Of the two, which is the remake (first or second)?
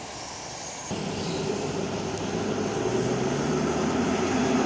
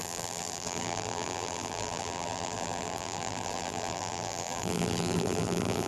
second